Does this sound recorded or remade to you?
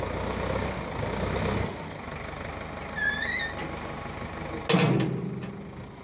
recorded